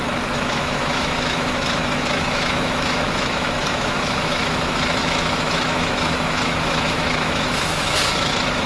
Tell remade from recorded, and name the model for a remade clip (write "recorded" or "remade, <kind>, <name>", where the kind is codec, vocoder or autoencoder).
remade, autoencoder, DAC-VAE